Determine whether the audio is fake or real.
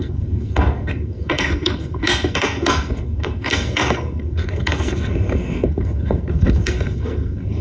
fake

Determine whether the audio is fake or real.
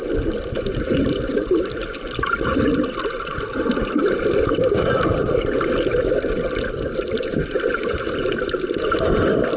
fake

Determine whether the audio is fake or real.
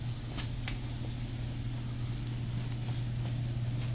real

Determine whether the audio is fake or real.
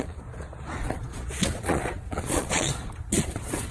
fake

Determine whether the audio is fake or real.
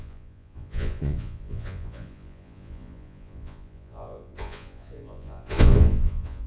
fake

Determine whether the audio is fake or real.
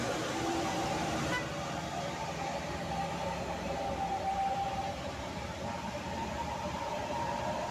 fake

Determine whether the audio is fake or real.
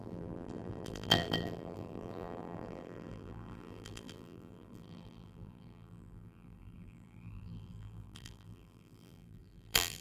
fake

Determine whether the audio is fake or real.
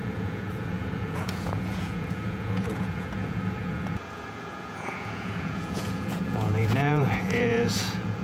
fake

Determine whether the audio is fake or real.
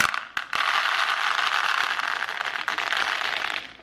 real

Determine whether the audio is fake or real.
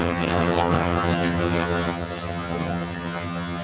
fake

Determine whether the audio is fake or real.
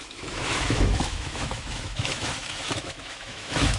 fake